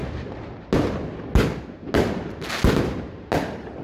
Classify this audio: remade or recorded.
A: recorded